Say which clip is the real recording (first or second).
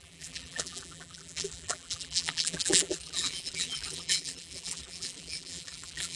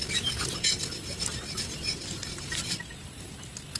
second